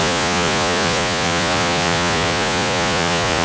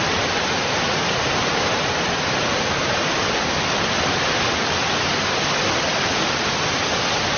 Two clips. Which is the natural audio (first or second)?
second